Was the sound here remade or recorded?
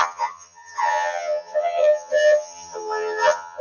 remade